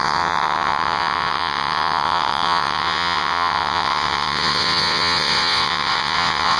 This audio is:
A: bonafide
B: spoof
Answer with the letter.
B